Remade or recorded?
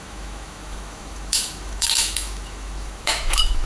remade